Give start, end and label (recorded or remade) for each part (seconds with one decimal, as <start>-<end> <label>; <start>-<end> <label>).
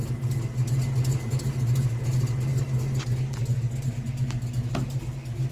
0.0-5.5 recorded